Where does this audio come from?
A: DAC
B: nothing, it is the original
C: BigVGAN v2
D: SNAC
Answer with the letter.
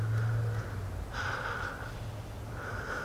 B